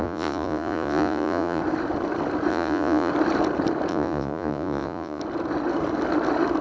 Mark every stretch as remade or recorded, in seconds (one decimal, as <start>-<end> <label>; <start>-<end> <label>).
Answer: 0.0-1.6 remade; 1.6-2.5 recorded; 2.5-3.1 remade; 3.1-3.9 recorded; 3.9-5.2 remade; 5.2-6.6 recorded